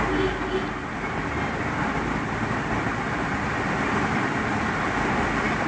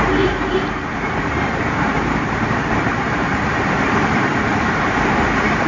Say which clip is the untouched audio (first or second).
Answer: first